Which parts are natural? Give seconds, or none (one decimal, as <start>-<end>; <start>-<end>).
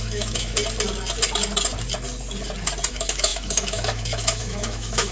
0.6-2.9